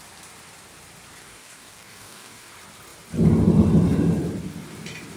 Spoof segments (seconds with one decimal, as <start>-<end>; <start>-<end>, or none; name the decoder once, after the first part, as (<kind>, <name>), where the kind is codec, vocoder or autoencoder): 1.2-2.5 (codec, DAC)